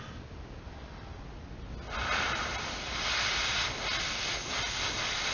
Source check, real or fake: real